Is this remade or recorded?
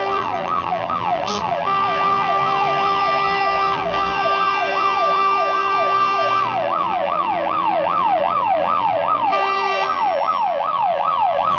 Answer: remade